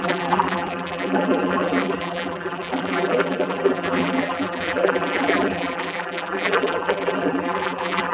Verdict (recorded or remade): remade